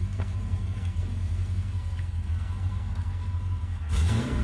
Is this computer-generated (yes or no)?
yes